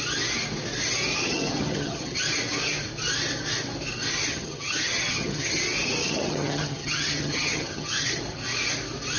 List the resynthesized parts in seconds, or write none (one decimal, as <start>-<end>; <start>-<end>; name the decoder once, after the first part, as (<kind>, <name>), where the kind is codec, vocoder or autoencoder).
1.1-2.2 (vocoder, HiFi-GAN); 4.3-5.6; 6.0-8.2

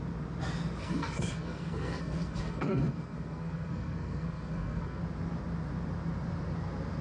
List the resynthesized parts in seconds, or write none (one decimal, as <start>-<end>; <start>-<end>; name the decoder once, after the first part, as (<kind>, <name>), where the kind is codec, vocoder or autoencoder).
0.8-5.0 (codec, SNAC)

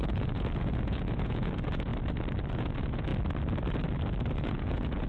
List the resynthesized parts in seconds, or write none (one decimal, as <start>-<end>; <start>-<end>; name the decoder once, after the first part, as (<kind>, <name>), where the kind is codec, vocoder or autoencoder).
0.0-1.9 (vocoder, Vocos); 2.5-3.1; 4.4-5.1

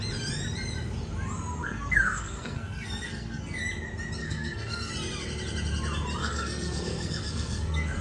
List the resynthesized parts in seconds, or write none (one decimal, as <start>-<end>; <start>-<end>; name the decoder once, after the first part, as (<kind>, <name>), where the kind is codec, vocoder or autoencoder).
1.6-3.6 (codec, SNAC); 4.2-4.9; 6.2-8.0

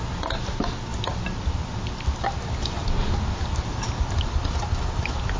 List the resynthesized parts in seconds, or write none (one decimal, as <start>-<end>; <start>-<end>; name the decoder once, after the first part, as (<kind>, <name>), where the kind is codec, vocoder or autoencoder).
none